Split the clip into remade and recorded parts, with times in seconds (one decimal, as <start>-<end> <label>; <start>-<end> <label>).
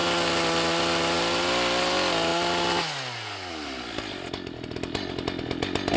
0.0-6.0 recorded